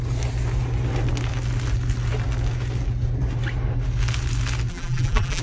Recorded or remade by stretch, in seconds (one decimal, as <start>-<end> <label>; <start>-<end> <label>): 0.0-4.7 recorded; 4.7-5.4 remade